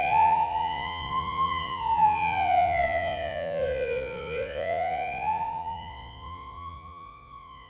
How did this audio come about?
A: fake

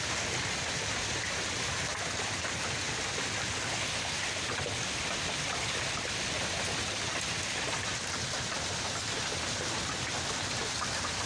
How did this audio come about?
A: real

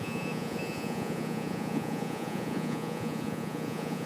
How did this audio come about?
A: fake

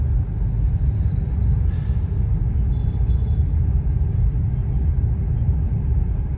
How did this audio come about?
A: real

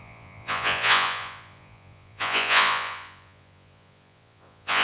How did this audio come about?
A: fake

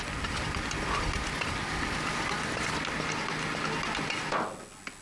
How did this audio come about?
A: real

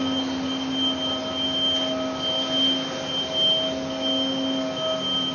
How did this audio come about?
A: real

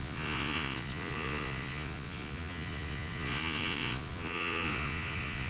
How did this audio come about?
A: fake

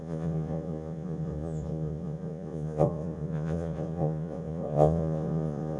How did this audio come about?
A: fake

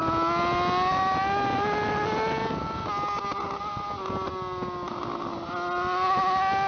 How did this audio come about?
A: real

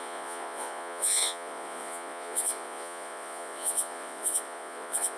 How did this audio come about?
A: fake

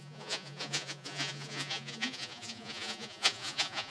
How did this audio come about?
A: fake